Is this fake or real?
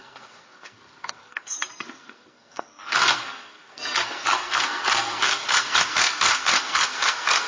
fake